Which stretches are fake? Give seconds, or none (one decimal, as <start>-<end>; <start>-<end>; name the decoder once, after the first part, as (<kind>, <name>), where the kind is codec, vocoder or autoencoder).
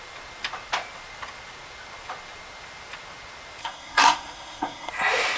3.6-4.9 (codec, SNAC)